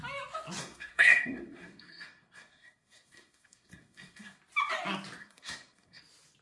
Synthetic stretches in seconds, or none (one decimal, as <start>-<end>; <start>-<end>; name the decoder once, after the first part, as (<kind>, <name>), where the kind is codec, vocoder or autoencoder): 0.6-4.4 (codec, SNAC); 5.2-6.0